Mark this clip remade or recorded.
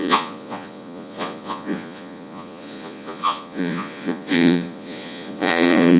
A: remade